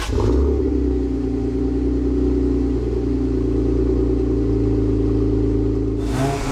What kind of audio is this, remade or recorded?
recorded